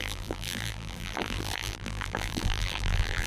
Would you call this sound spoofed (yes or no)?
yes